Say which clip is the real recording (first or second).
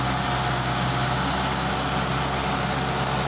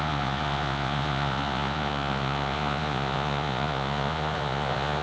first